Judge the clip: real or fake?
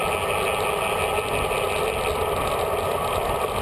real